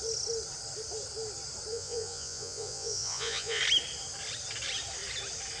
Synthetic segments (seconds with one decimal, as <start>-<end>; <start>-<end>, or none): 1.7-3.6